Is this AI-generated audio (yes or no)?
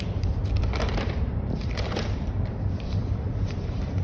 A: yes